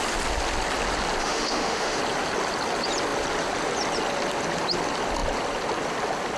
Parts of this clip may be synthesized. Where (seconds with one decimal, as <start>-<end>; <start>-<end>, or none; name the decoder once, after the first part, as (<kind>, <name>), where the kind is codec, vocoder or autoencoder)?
1.2-2.0 (autoencoder, DAC-VAE)